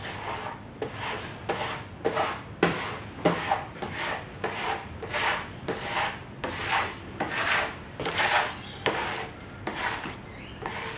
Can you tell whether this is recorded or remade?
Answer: recorded